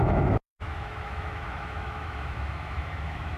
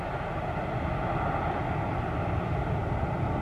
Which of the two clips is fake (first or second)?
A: first